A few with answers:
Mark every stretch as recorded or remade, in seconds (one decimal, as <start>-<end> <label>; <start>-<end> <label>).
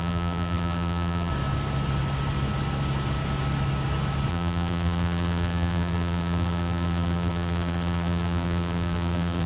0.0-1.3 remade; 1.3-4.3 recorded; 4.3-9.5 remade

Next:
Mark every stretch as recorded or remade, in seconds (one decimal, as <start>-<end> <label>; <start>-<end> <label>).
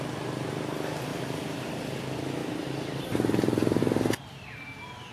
0.0-1.1 recorded; 1.1-1.7 remade; 1.7-2.4 recorded; 2.4-3.8 remade; 3.8-5.1 recorded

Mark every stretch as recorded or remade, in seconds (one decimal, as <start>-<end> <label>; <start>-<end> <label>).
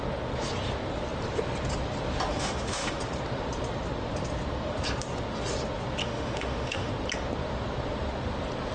0.0-2.3 recorded; 2.3-3.0 remade; 3.0-6.0 recorded; 6.0-6.9 remade; 6.9-8.7 recorded